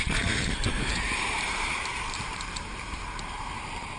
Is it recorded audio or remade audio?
remade